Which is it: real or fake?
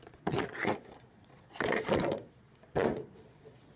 fake